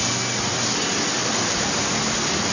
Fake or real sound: real